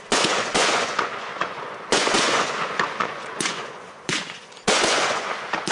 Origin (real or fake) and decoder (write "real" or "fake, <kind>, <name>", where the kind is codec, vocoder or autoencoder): fake, vocoder, Vocos